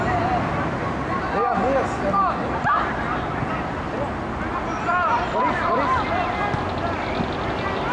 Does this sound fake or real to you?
real